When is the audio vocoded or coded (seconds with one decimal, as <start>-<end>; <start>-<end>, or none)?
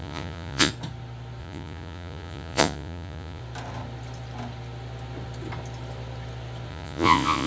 0.0-0.7; 1.4-3.4; 6.7-7.5